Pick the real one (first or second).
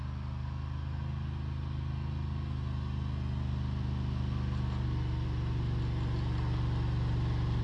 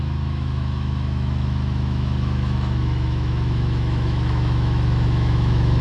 first